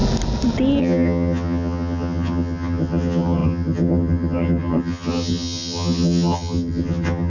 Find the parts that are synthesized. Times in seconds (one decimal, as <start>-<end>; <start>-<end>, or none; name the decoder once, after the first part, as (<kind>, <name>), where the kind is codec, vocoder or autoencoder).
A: 0.8-7.3 (vocoder, HiFi-GAN)